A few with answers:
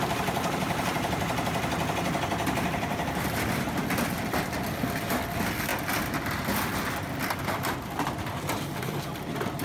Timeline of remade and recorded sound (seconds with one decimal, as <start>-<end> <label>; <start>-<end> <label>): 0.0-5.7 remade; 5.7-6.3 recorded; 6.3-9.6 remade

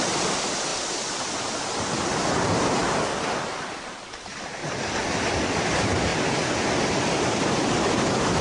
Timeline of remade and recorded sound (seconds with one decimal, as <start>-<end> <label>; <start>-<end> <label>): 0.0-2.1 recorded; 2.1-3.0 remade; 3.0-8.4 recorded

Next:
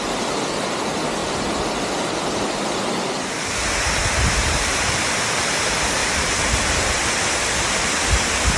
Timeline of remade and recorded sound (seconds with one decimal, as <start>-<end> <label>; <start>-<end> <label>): 0.0-6.0 recorded; 6.0-7.3 remade; 7.3-8.6 recorded

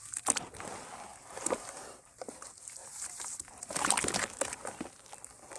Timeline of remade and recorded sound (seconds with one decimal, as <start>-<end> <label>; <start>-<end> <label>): 0.0-1.1 recorded; 1.1-2.3 remade; 2.3-2.8 recorded; 2.8-3.9 remade; 3.9-5.6 recorded

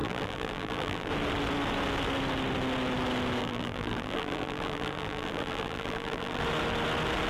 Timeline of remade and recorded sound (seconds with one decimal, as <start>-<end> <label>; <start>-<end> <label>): 0.0-1.1 remade; 1.1-3.4 recorded; 3.4-6.4 remade; 6.4-7.3 recorded

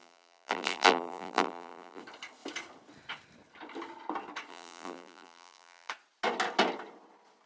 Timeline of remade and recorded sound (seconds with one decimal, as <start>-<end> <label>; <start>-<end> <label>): 0.0-2.0 remade; 2.0-4.5 recorded; 4.5-5.9 remade; 5.9-7.5 recorded

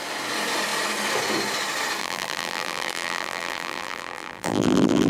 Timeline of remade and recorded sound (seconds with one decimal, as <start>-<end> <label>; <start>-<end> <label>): 0.0-2.0 recorded; 2.0-5.1 remade

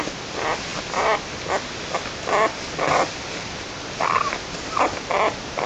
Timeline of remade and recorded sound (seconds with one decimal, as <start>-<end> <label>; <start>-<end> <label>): 0.0-0.7 recorded; 0.7-3.5 remade; 3.5-5.7 recorded